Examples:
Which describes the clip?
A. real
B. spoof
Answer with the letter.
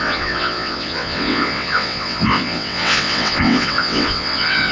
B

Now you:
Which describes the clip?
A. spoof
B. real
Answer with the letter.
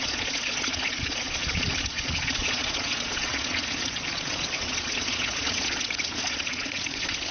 A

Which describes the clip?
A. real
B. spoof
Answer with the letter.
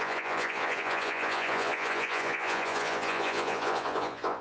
B